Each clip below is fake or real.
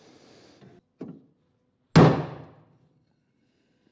real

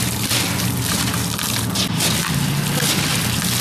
real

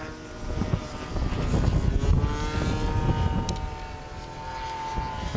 real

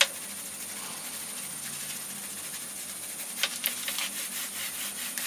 real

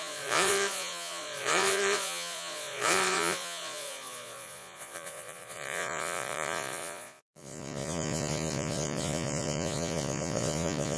fake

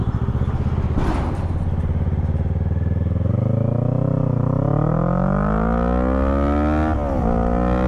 real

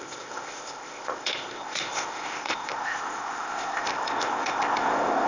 fake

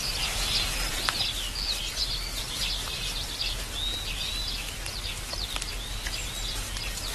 real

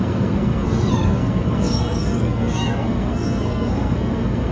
fake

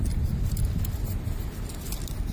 fake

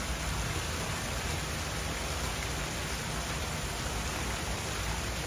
real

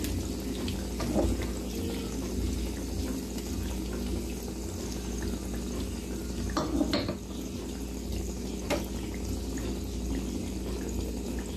real